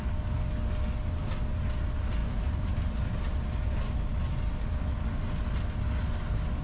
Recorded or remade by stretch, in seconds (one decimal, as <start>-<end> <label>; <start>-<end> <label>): 0.0-2.2 recorded; 2.2-3.0 remade; 3.0-6.6 recorded